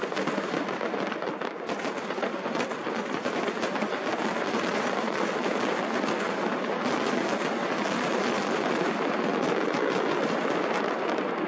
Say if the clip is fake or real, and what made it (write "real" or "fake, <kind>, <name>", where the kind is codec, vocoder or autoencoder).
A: real